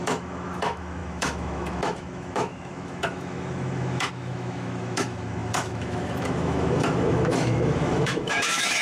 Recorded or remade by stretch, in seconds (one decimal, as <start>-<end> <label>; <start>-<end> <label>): 0.0-8.8 remade